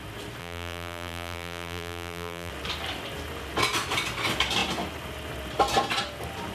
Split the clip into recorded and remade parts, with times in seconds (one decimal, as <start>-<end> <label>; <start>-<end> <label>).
0.0-0.4 recorded; 0.4-2.5 remade; 2.5-6.5 recorded